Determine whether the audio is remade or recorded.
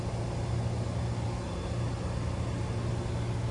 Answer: recorded